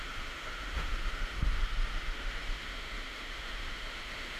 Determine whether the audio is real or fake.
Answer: fake